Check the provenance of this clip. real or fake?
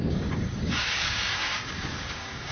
fake